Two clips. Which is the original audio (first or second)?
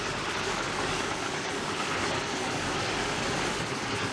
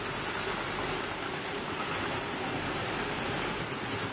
second